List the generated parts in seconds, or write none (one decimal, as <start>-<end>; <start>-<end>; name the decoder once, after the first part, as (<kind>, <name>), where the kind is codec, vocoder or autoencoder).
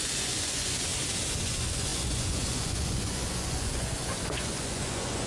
0.0-0.9 (vocoder, Vocos); 1.4-5.3